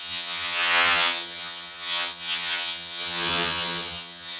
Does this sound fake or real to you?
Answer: fake